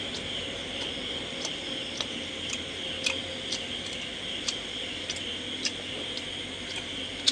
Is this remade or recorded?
recorded